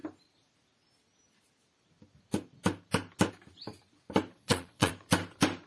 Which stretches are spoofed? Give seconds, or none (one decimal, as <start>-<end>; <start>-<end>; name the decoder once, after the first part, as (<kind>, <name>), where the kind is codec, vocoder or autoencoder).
4.3-4.9 (vocoder, Vocos)